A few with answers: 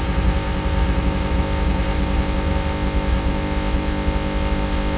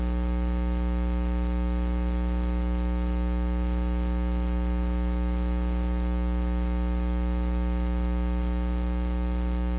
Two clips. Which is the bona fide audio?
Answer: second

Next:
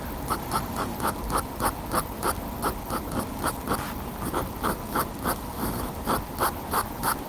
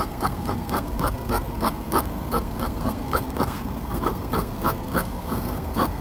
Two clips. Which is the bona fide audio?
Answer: first